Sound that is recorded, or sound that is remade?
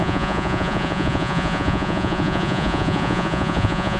remade